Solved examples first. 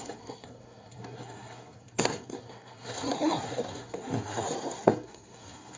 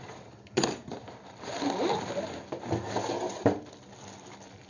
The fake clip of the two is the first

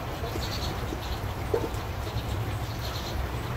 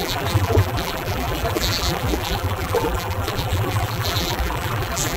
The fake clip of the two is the second